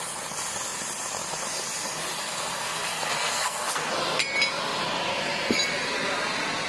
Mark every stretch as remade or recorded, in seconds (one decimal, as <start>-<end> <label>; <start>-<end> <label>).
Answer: 0.0-2.2 recorded; 2.2-3.9 remade; 3.9-6.7 recorded